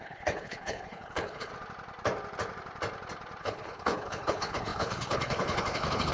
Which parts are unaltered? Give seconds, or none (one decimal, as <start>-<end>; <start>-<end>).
1.5-3.4